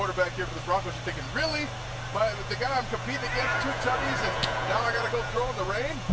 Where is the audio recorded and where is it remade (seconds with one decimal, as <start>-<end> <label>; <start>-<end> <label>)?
0.0-2.1 recorded; 2.1-6.1 remade